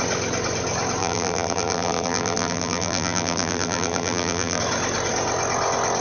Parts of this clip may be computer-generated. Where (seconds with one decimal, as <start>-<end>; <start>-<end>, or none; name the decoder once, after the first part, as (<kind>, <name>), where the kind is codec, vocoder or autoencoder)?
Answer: 1.0-4.6 (vocoder, BigVGAN v2)